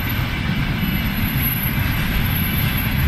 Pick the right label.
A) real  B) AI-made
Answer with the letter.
A